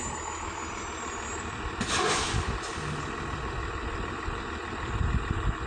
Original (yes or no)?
yes